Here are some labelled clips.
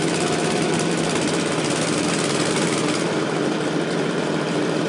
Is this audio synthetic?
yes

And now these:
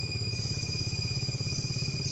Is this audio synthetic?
yes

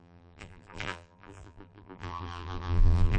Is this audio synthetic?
yes